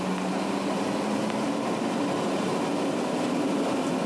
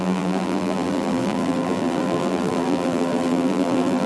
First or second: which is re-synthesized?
second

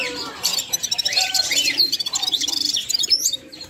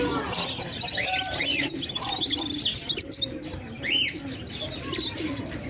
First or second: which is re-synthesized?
first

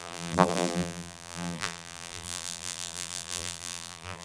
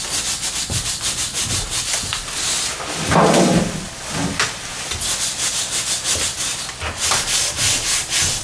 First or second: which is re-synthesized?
first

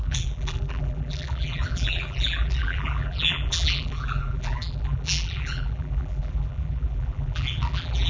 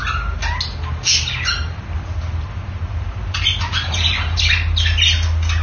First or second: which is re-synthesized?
first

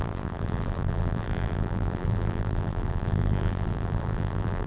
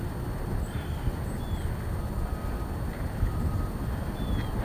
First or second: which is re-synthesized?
first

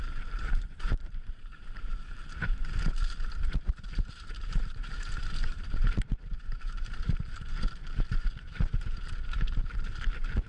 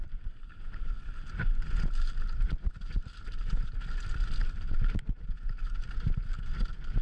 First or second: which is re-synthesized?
first